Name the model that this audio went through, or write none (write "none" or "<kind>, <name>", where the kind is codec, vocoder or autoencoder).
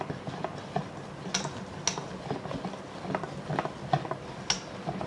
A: none